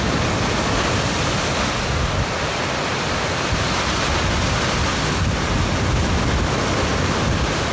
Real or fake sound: real